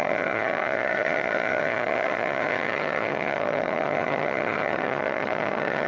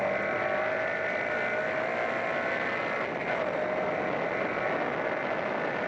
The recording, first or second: second